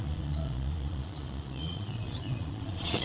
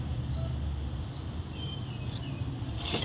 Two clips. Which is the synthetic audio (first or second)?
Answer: first